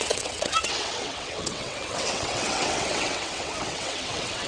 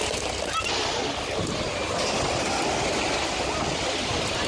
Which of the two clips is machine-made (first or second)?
first